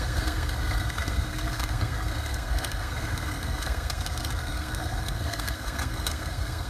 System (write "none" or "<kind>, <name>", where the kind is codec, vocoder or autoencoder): codec, SNAC